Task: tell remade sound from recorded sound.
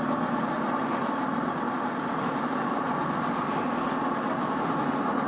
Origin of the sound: recorded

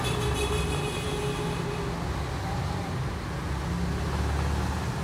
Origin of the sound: recorded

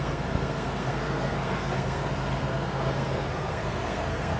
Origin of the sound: remade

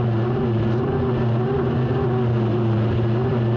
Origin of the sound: recorded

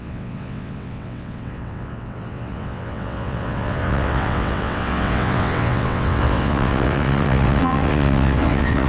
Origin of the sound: remade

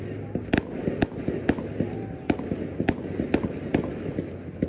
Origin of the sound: recorded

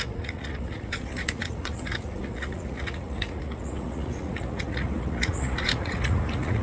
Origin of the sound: remade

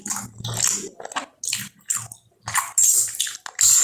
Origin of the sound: recorded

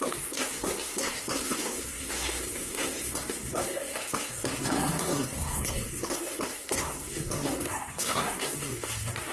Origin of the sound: remade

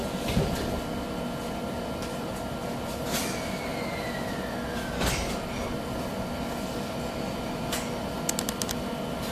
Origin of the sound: recorded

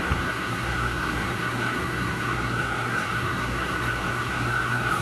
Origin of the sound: remade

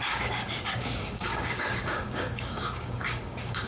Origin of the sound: remade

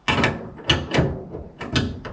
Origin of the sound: recorded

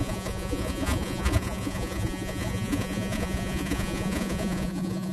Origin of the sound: remade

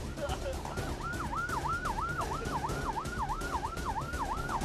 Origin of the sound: recorded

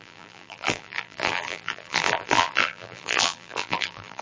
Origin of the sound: remade